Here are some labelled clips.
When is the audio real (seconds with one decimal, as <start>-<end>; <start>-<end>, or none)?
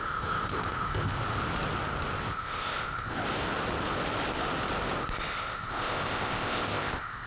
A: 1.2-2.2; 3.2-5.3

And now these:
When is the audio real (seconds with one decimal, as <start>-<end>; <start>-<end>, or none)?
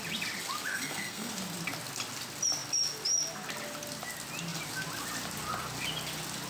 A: 0.0-0.7; 1.3-6.5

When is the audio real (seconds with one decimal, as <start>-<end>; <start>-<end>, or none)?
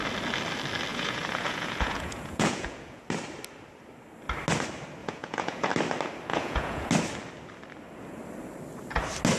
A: 0.0-0.9; 3.0-5.0; 5.7-6.3; 6.9-9.4